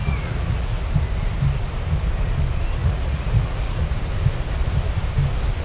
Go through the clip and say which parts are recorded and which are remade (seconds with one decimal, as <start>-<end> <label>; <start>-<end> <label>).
0.0-0.8 remade; 0.8-2.8 recorded; 2.8-3.8 remade; 3.8-5.6 recorded

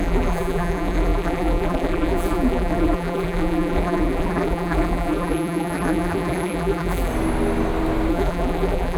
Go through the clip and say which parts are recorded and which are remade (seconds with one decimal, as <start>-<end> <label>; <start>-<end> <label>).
0.0-7.1 remade; 7.1-8.1 recorded; 8.1-9.0 remade

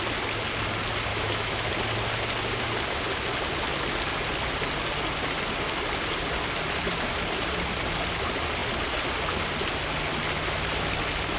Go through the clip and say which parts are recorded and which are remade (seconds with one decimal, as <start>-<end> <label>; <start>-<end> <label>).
0.0-1.1 recorded; 1.1-1.7 remade; 1.7-11.4 recorded

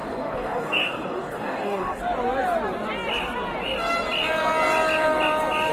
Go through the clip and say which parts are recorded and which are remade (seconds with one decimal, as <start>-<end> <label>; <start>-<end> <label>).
0.0-2.0 remade; 2.0-5.7 recorded

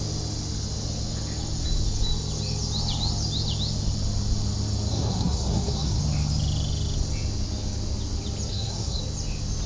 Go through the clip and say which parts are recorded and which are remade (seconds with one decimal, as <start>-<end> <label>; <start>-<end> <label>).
0.0-4.9 recorded; 4.9-6.0 remade; 6.0-8.5 recorded; 8.5-9.0 remade; 9.0-9.7 recorded

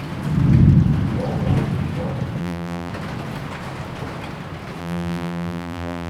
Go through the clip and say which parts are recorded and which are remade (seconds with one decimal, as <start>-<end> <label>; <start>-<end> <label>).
0.0-2.4 recorded; 2.4-2.9 remade; 2.9-4.8 recorded; 4.8-6.1 remade

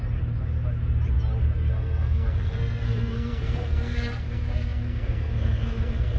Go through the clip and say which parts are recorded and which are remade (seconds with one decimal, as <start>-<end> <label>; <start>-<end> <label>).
0.0-1.7 recorded; 1.7-6.2 remade

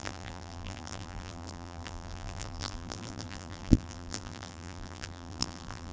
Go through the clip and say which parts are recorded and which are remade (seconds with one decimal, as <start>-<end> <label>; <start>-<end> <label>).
0.0-5.9 remade